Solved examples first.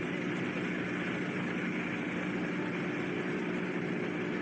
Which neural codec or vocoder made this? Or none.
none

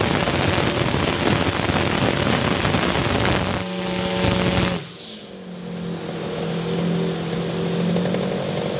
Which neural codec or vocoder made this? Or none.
none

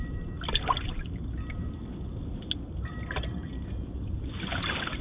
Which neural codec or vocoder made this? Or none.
none